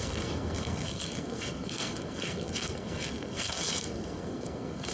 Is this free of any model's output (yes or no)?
no